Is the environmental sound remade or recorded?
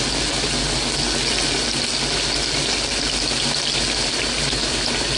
recorded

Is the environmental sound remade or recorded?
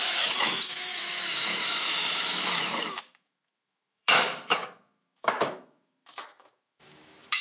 remade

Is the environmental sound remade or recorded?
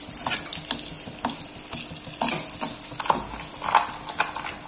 recorded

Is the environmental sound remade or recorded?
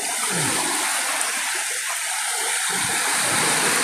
recorded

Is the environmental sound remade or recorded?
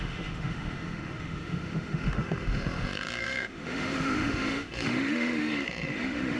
remade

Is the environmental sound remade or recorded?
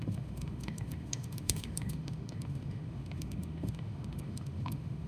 remade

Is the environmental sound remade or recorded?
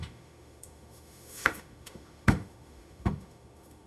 remade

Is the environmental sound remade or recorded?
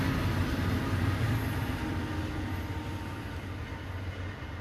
recorded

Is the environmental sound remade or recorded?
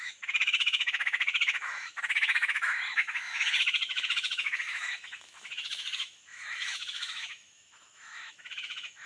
remade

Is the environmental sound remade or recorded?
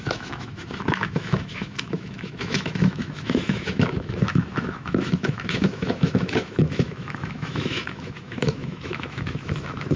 remade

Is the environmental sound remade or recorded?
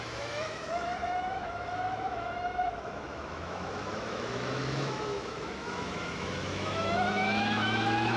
remade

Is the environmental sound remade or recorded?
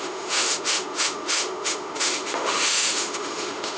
remade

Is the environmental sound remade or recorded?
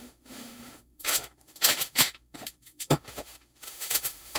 remade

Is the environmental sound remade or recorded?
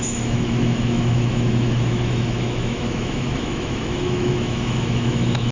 remade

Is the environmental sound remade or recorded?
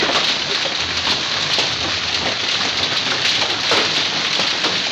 recorded